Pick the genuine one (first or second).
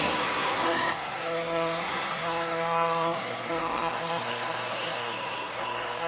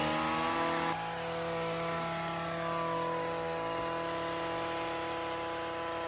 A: second